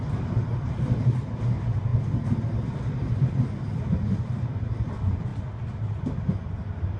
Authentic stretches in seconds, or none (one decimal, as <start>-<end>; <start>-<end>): 0.0-7.0